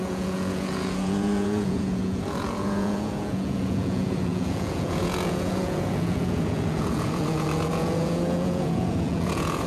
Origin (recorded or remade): remade